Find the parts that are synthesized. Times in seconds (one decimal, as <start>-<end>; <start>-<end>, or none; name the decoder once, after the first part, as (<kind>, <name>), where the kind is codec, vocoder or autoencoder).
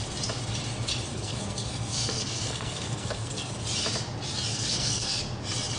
1.1-3.5 (codec, SNAC); 4.5-5.2